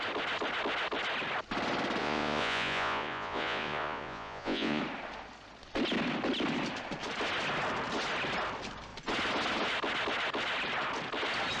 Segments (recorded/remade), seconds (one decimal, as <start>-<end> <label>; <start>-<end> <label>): 0.0-2.0 recorded; 2.0-4.8 remade; 4.8-11.6 recorded